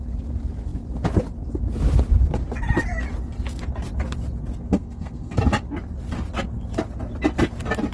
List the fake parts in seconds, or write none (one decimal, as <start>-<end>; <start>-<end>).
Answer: 4.7-5.4